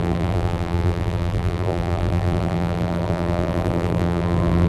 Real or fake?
fake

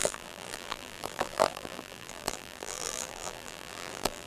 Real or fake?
fake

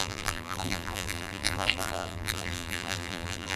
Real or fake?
fake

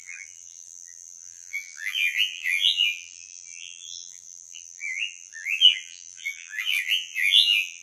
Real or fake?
fake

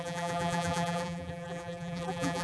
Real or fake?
fake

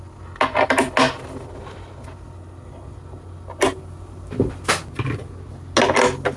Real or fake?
real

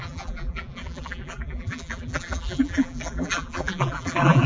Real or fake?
fake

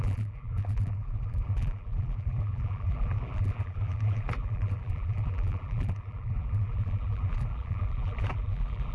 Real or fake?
fake